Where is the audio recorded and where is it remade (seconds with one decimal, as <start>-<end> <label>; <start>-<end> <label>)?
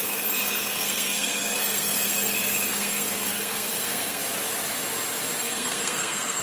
0.0-4.2 remade; 4.2-5.4 recorded; 5.4-6.4 remade